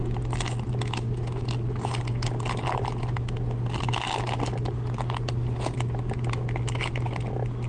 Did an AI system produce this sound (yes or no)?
no